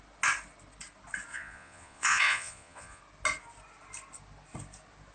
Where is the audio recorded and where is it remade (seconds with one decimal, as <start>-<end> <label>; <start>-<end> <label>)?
0.0-1.3 recorded; 1.3-3.0 remade; 3.0-5.1 recorded